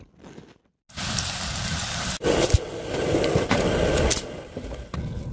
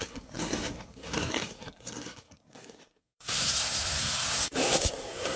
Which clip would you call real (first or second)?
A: first